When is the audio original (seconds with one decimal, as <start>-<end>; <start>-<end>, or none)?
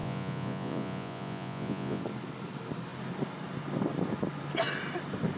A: 2.0-5.4